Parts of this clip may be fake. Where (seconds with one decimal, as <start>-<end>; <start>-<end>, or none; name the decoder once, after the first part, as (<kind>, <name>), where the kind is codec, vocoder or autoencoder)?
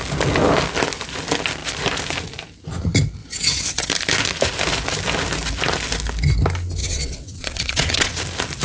3.2-3.9 (vocoder, WaveNeXt); 6.8-8.1